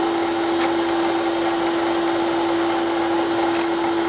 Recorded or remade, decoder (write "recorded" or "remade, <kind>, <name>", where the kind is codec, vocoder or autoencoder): recorded